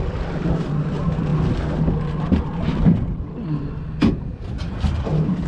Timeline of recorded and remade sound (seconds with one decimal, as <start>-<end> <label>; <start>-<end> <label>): 0.0-5.5 recorded